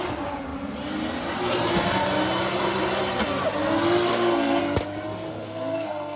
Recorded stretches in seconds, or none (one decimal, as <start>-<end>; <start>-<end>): 0.0-4.1; 4.6-5.3